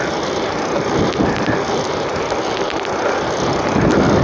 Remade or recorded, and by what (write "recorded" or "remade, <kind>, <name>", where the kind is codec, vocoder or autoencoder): recorded